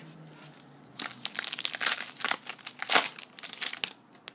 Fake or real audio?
real